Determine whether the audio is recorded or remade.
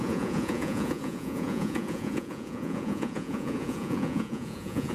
remade